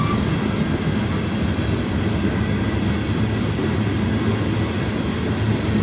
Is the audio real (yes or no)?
yes